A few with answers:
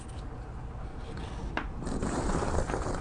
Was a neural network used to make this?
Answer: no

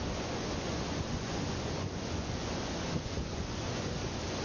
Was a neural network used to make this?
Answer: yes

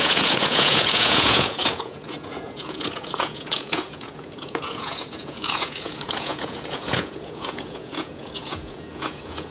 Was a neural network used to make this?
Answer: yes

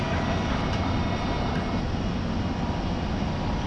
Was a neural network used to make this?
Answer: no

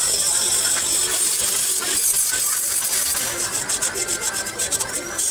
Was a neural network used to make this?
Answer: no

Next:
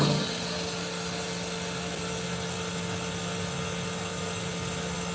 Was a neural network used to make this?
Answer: no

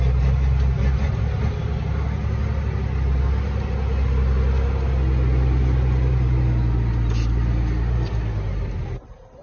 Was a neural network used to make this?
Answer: no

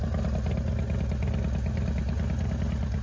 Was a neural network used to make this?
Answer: no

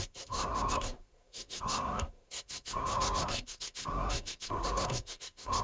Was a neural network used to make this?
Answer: yes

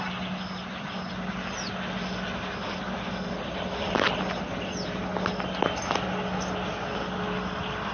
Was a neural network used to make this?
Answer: no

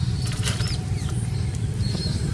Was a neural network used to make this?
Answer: yes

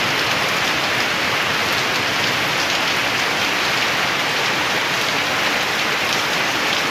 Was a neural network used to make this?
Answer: no